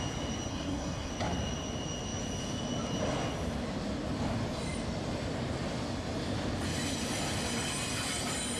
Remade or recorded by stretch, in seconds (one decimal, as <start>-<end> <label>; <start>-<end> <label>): 0.0-0.5 recorded; 0.5-1.1 remade; 1.1-8.6 recorded

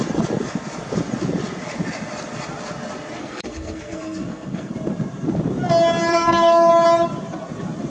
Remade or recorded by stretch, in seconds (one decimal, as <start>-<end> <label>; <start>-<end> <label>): 0.0-3.2 recorded; 3.2-4.7 remade; 4.7-6.1 recorded; 6.1-6.7 remade; 6.7-7.9 recorded

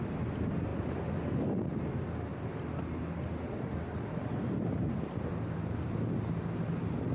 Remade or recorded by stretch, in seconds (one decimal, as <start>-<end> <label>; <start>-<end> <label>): 0.0-7.1 recorded

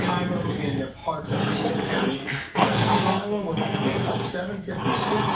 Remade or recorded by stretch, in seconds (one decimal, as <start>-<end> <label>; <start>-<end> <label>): 0.0-2.2 recorded; 2.2-4.1 remade; 4.1-5.3 recorded